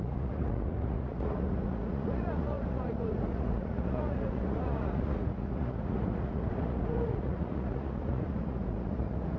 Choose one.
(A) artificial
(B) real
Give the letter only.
A